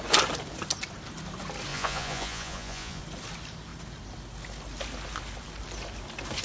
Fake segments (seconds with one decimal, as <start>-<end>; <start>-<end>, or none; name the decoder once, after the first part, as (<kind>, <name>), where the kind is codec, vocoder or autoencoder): 1.7-3.0 (vocoder, Vocos)